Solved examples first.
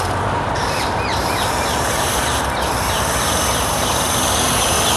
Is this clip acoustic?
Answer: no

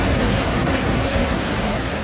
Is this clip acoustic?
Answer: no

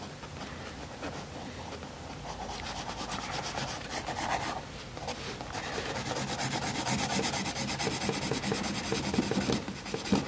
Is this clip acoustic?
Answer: yes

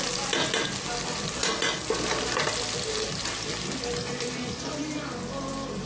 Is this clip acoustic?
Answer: yes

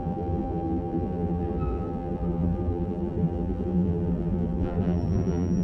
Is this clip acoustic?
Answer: no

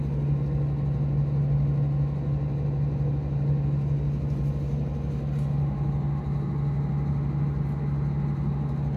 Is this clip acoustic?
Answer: yes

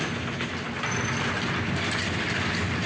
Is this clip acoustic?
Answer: yes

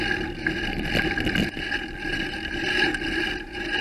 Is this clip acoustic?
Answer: yes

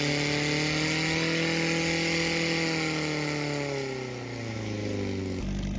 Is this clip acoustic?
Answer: yes